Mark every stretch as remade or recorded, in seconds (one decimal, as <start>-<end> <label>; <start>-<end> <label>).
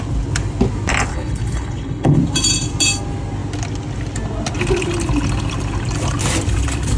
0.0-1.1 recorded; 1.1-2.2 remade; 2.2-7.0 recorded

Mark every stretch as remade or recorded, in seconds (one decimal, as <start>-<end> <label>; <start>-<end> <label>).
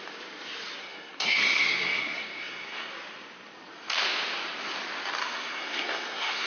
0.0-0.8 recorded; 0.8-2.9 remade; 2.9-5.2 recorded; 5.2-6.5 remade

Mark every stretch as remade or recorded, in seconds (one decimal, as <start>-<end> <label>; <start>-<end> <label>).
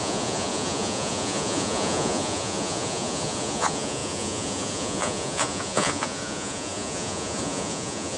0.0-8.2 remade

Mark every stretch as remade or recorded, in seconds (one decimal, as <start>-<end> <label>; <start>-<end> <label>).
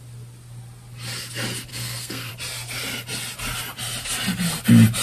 0.0-1.7 recorded; 1.7-2.3 remade; 2.3-5.0 recorded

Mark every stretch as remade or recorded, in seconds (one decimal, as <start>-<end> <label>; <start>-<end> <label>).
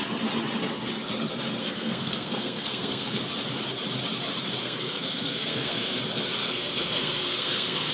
0.0-1.6 recorded; 1.6-3.2 remade; 3.2-4.6 recorded; 4.6-6.0 remade; 6.0-6.4 recorded; 6.4-7.9 remade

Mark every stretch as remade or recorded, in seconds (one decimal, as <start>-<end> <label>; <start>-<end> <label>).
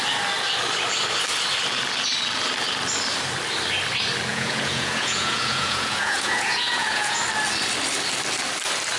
0.0-4.3 recorded; 4.3-7.2 remade; 7.2-9.0 recorded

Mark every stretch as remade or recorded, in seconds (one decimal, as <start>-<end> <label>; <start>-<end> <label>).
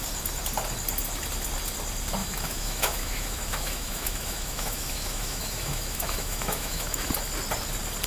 0.0-2.2 recorded; 2.2-7.1 remade; 7.1-8.1 recorded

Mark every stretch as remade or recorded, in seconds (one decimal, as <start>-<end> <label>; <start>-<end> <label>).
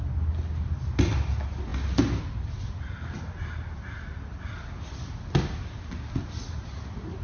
0.0-7.2 recorded